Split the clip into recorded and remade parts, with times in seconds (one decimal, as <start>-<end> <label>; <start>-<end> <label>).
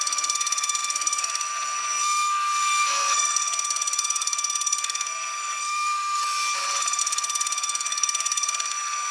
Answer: 0.0-6.2 remade; 6.2-7.0 recorded; 7.0-9.1 remade